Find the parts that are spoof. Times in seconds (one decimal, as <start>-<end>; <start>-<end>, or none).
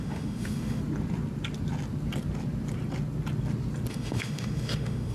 0.0-0.8; 3.9-5.1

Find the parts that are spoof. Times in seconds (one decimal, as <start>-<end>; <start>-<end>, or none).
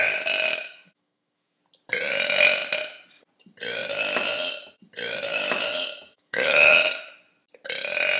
0.5-1.6; 5.3-7.0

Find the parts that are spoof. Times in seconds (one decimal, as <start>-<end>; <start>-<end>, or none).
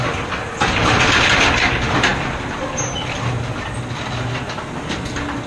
none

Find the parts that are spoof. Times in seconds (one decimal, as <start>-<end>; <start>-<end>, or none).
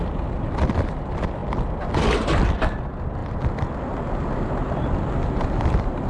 none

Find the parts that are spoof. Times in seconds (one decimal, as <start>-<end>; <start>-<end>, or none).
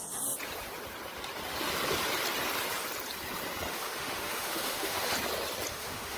3.7-5.1; 5.7-6.2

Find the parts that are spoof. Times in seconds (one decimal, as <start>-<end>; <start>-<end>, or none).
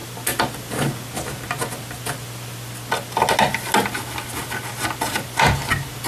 none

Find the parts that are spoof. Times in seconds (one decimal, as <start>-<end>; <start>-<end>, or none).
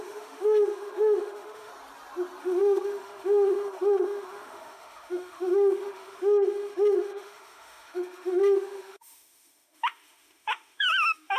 0.0-1.7; 2.4-11.4